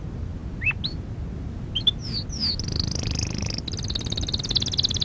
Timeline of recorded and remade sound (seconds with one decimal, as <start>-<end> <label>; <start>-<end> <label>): 0.0-5.0 recorded